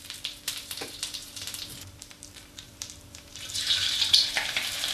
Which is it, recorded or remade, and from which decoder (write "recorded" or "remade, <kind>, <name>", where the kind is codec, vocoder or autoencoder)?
remade, vocoder, BigVGAN v2